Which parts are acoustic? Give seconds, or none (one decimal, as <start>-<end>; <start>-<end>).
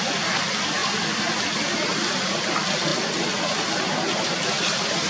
0.0-5.1